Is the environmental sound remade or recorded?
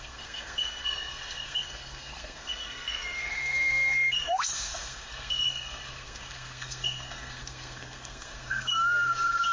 remade